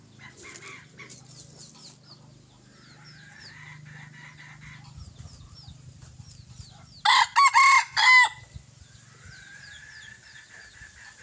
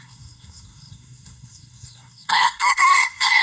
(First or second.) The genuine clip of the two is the first